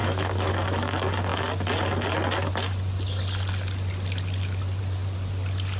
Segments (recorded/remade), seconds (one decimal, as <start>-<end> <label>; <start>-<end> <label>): 0.0-0.5 remade; 0.5-5.8 recorded